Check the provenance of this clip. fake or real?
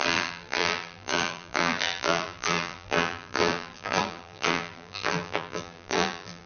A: fake